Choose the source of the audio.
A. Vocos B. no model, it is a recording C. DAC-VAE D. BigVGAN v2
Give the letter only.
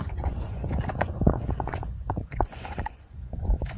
A